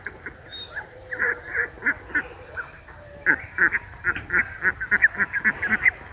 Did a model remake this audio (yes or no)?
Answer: no